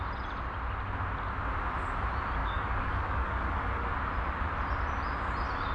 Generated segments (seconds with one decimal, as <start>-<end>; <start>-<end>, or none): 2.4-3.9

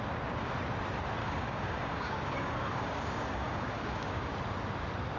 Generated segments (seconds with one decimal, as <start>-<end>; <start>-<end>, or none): 1.2-4.3

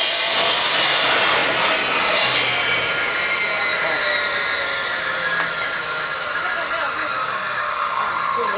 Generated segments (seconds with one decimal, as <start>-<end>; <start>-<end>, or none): 7.2-8.1

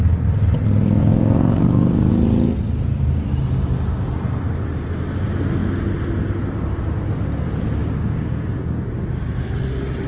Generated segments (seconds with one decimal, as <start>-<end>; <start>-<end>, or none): 1.0-2.1; 7.8-8.9

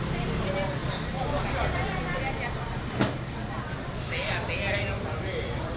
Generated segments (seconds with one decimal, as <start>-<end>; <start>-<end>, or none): none